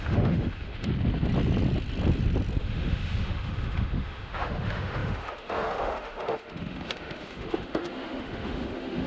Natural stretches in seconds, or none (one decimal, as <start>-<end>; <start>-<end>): 0.9-2.6